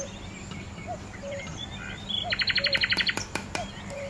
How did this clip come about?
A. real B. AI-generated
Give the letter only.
B